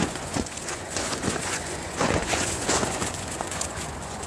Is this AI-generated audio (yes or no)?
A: yes